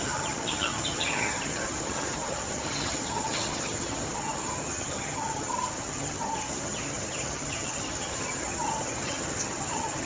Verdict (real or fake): fake